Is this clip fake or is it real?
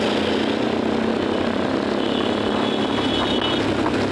real